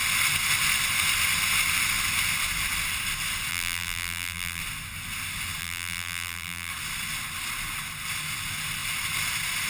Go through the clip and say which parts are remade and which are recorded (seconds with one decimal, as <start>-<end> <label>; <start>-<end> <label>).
0.0-3.5 recorded; 3.5-4.6 remade; 4.6-5.6 recorded; 5.6-6.7 remade; 6.7-9.7 recorded